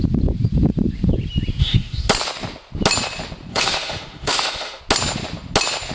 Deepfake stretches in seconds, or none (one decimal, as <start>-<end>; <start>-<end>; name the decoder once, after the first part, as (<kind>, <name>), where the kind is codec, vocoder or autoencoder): 1.6-2.1 (autoencoder, DAC-VAE); 3.5-4.8